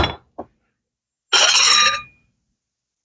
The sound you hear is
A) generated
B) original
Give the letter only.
B